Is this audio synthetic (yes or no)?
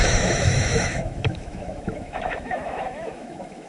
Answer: yes